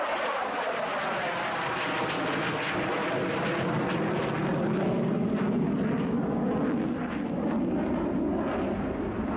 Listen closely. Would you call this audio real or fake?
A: real